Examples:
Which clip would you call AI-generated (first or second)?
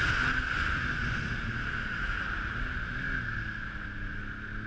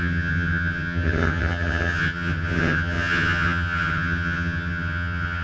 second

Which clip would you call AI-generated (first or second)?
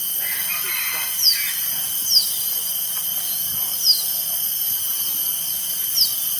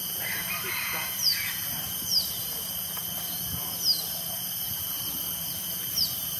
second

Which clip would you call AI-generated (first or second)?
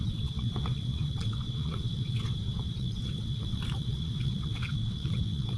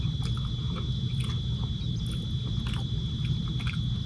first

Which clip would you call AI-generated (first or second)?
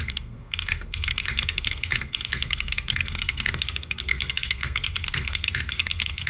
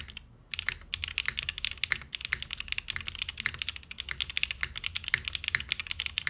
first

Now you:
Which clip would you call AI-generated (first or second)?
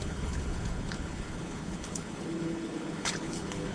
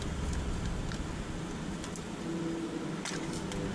first